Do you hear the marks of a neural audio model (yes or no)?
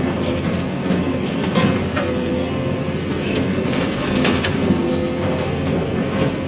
yes